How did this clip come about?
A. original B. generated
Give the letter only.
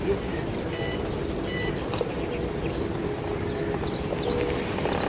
B